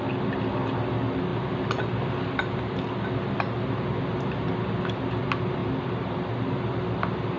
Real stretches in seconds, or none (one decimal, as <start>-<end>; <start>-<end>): 0.0-7.4